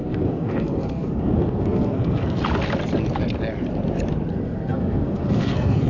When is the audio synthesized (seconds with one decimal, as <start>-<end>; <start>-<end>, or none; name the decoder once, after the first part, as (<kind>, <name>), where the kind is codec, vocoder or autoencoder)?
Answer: 0.0-2.4 (codec, SNAC); 4.3-5.9